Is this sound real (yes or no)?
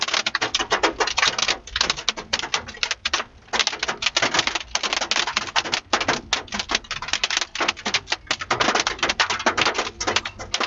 yes